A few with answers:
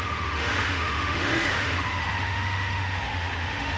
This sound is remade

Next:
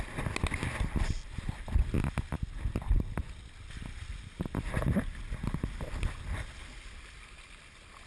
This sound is recorded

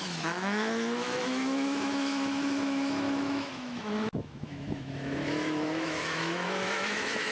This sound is remade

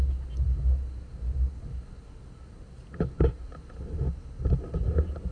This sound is recorded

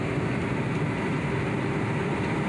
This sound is recorded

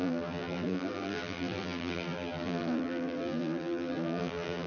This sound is remade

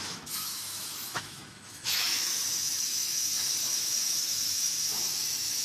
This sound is remade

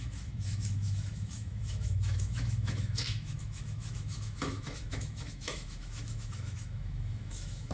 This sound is remade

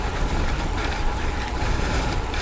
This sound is remade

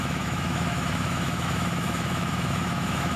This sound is remade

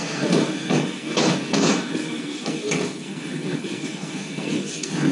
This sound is remade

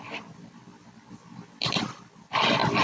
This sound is recorded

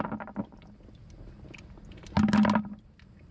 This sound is recorded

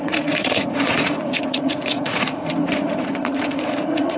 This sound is remade